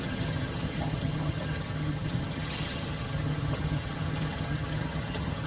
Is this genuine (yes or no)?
no